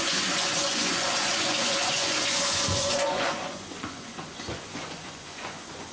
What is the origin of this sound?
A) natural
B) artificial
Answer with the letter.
B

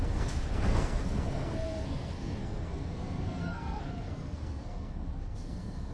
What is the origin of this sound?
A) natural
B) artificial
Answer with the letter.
B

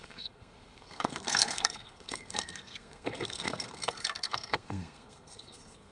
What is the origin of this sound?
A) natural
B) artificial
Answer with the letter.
B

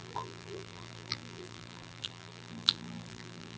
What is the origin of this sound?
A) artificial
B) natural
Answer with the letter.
A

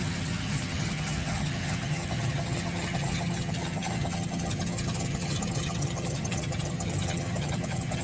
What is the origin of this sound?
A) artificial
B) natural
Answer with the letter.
A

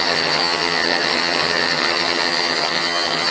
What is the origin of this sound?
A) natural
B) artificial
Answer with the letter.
B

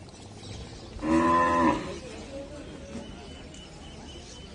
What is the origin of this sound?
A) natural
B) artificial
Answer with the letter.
A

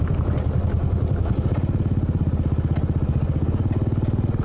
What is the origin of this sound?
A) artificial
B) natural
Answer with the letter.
B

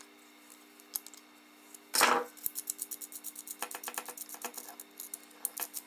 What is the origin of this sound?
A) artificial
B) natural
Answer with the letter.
B